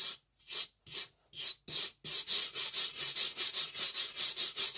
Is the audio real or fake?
real